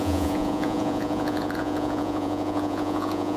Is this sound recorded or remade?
remade